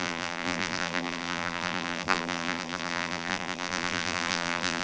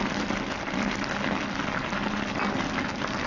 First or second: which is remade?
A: first